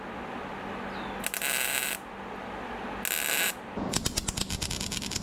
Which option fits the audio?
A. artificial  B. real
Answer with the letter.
B